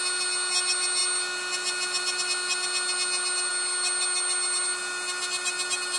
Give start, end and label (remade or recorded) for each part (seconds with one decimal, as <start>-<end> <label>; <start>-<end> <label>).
0.0-6.0 recorded